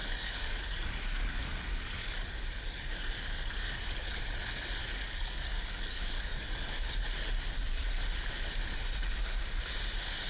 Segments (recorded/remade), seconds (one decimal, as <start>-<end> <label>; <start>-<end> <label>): 0.0-4.2 remade; 4.2-4.8 recorded; 4.8-6.9 remade; 6.9-10.3 recorded